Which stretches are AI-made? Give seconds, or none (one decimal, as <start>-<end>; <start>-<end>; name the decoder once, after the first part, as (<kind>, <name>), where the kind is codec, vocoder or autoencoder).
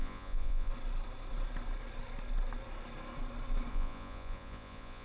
0.0-0.7 (vocoder, Vocos); 3.7-5.0